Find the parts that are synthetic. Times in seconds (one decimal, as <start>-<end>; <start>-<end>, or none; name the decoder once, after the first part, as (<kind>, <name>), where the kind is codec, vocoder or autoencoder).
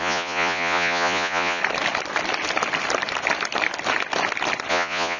0.0-1.6 (vocoder, Vocos); 4.7-5.2